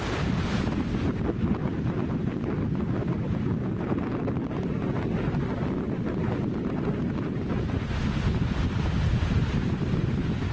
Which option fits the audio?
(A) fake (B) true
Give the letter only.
B